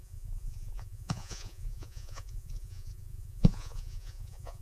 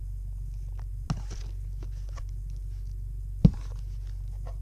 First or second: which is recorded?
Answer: second